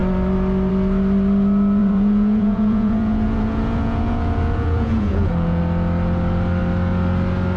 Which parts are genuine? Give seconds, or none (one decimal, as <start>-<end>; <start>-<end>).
0.0-1.8; 5.6-7.6